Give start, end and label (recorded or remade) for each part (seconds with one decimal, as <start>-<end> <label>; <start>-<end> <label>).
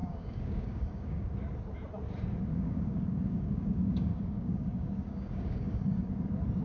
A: 0.0-1.3 remade; 1.3-2.5 recorded; 2.5-6.1 remade; 6.1-6.6 recorded